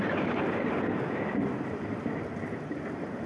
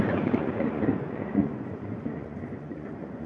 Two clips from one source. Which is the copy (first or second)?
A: second